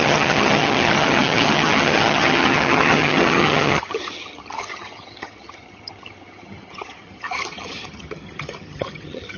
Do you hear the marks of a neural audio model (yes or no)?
yes